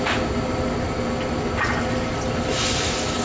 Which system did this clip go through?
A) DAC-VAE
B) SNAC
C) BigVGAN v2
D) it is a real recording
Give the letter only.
D